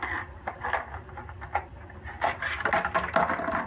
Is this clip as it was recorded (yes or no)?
yes